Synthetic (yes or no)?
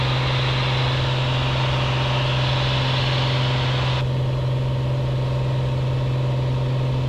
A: no